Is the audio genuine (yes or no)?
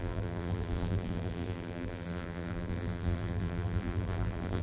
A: no